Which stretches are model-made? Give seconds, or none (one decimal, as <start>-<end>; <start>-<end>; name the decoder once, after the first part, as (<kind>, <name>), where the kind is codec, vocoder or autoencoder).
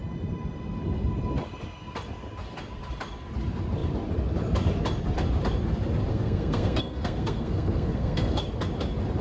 6.1-8.4 (codec, SNAC)